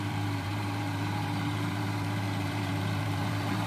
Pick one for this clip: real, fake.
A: fake